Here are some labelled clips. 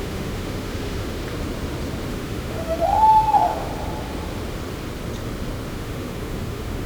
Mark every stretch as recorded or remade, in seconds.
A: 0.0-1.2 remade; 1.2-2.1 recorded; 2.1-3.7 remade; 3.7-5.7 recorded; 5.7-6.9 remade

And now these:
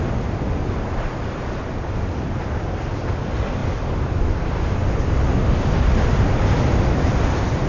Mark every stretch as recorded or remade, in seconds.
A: 0.0-7.7 recorded